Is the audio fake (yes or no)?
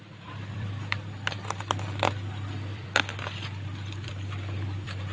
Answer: yes